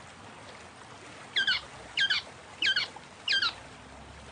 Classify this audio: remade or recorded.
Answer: recorded